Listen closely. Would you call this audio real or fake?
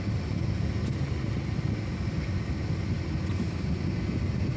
real